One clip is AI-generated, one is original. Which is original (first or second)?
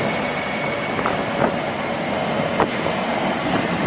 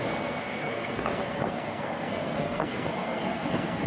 first